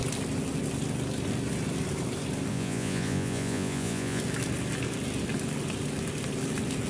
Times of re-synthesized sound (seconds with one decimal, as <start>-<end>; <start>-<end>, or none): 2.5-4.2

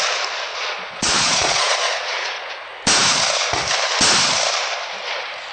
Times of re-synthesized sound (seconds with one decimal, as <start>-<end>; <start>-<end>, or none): 0.5-2.5

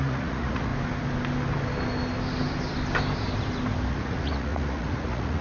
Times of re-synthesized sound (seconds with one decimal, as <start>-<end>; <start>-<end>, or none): 0.0-0.7; 3.9-5.4

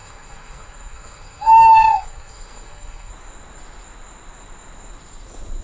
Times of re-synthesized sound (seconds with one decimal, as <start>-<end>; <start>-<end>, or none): 0.0-3.1

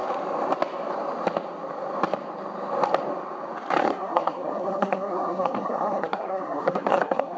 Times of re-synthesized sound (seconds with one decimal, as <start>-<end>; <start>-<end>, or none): 3.8-7.4

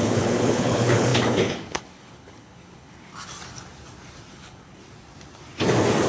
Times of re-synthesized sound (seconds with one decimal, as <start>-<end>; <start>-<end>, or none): 0.0-3.1; 4.3-4.8

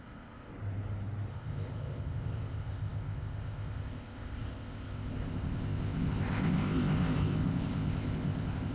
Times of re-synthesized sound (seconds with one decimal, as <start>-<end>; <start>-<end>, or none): 0.0-0.5; 1.3-8.7